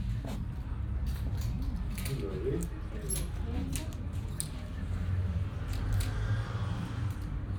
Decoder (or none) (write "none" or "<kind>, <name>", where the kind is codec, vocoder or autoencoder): none